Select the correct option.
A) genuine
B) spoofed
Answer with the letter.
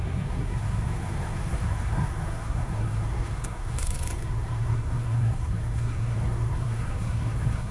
B